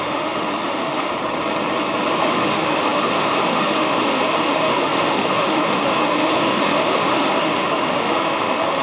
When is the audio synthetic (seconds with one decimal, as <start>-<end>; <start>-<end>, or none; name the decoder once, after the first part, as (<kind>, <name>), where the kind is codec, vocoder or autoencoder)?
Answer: 0.0-1.1 (autoencoder, DAC-VAE); 2.2-8.8